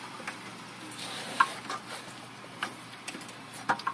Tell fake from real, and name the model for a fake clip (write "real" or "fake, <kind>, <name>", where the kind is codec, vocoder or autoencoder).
real